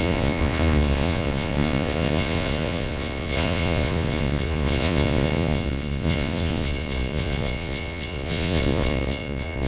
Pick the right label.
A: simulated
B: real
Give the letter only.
A